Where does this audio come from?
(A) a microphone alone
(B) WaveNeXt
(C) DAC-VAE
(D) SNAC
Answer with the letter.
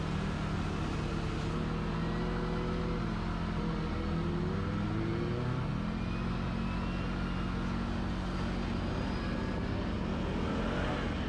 A